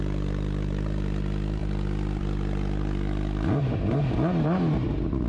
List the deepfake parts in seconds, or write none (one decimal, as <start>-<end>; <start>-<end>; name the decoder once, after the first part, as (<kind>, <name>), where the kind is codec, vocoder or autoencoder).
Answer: 1.6-2.2 (vocoder, BigVGAN v2)